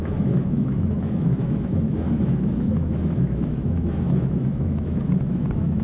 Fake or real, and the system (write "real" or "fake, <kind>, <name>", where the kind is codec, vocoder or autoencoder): fake, autoencoder, DAC-VAE